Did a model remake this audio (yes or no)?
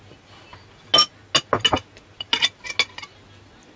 no